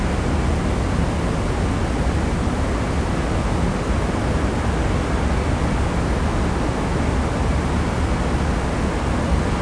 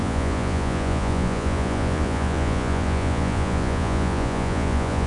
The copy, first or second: second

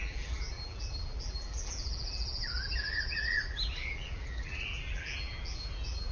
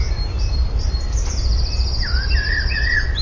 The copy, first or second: first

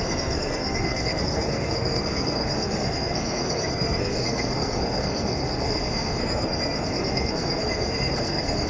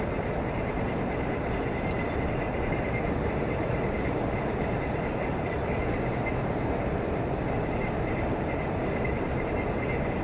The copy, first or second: first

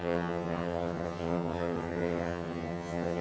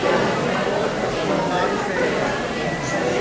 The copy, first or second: first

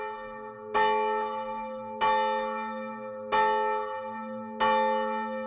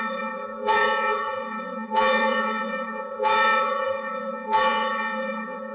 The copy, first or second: second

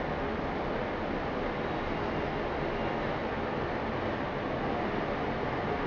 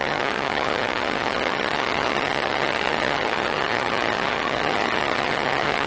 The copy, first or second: second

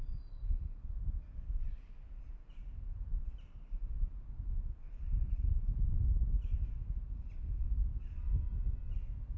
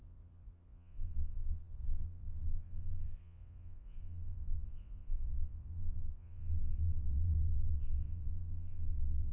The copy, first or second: second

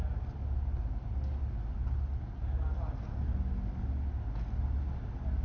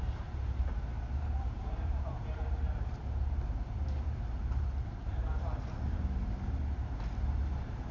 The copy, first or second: second